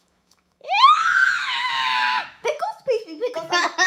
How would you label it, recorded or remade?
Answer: remade